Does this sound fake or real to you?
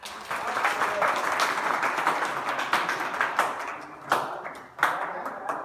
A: real